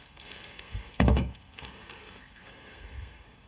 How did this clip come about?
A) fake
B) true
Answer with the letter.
A